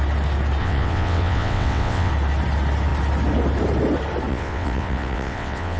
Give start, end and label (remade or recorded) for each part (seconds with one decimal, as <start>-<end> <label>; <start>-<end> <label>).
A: 0.0-0.6 recorded; 0.6-2.1 remade; 2.1-4.3 recorded; 4.3-5.8 remade

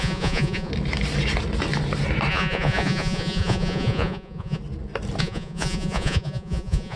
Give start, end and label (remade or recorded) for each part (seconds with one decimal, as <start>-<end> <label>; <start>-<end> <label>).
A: 0.0-0.7 remade; 0.7-2.3 recorded; 2.3-4.6 remade; 4.6-5.2 recorded; 5.2-7.0 remade

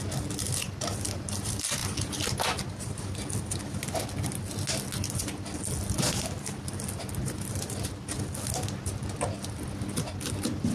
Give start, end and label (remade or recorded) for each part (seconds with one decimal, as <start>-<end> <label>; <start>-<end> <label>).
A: 0.0-10.7 recorded

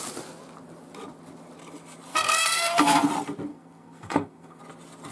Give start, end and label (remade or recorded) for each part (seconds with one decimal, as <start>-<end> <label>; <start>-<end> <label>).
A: 0.0-2.1 recorded; 2.1-3.1 remade; 3.1-3.5 recorded; 3.5-4.6 remade; 4.6-5.1 recorded